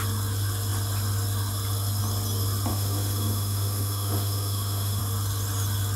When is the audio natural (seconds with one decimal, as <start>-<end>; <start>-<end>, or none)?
0.0-2.7; 5.0-6.0